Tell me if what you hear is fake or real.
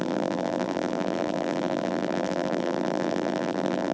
fake